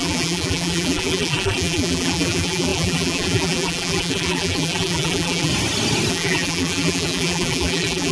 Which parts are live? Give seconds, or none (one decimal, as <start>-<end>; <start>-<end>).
5.5-6.1

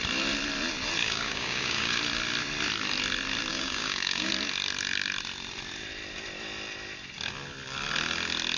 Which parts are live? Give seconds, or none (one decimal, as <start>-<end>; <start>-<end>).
0.0-1.0; 2.0-3.5; 4.3-8.6

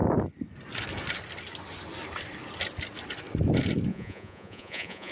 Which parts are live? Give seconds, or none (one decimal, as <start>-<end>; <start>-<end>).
0.0-3.9

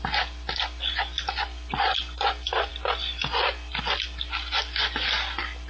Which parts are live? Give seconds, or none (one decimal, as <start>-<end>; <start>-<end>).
0.0-5.7

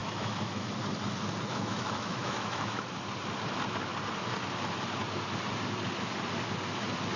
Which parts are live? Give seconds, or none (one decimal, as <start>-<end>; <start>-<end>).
0.7-1.5; 2.9-7.2

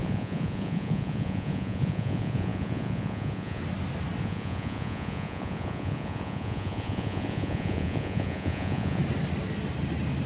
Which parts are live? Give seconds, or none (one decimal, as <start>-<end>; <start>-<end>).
3.6-4.2; 9.0-10.3